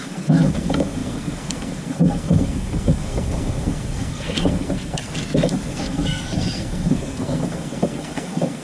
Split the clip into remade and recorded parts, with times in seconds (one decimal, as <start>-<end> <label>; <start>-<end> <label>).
0.0-8.6 remade